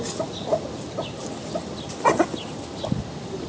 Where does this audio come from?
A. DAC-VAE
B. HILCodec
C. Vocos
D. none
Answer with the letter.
D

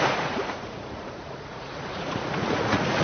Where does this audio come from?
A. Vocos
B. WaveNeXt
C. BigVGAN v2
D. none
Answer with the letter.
A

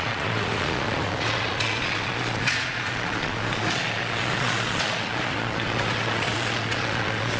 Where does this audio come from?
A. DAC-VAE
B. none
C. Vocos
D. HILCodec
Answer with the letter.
C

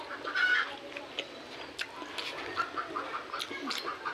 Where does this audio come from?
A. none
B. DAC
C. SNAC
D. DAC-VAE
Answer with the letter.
A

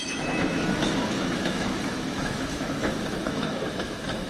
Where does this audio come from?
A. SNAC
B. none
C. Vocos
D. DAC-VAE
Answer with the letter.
D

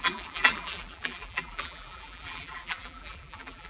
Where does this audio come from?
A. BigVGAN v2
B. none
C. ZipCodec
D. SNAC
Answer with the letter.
A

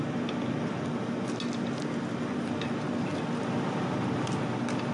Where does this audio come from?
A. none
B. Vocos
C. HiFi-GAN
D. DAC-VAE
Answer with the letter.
A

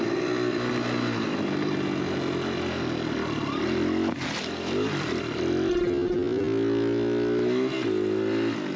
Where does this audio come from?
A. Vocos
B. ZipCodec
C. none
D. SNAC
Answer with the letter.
C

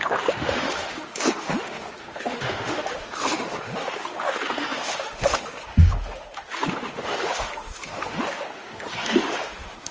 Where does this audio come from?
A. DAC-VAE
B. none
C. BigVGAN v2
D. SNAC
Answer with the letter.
A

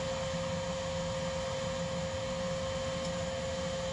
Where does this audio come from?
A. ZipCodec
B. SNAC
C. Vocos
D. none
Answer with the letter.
D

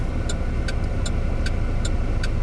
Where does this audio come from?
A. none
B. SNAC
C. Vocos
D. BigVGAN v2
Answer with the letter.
A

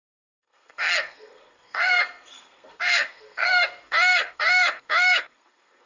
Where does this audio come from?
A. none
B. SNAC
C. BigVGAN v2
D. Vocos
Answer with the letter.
B